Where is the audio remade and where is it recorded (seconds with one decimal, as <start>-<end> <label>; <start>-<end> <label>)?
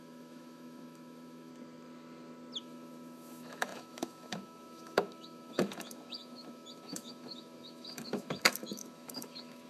0.0-1.5 remade; 1.5-2.6 recorded; 2.6-9.7 remade